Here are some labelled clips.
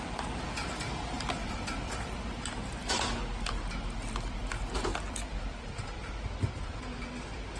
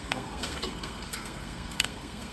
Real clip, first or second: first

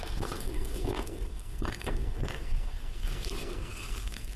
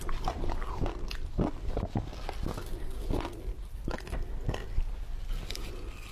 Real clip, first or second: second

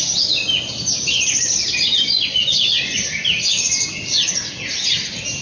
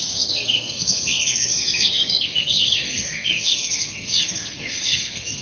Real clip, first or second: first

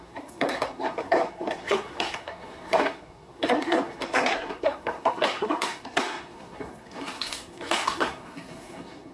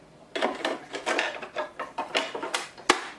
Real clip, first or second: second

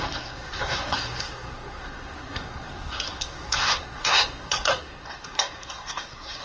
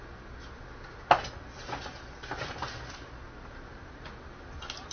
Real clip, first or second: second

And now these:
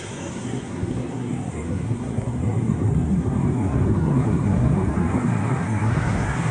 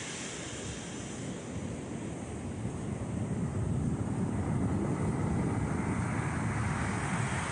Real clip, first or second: second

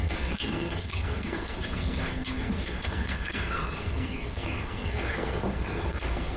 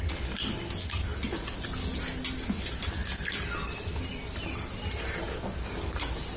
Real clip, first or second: second